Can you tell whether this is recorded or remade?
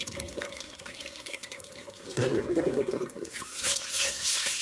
remade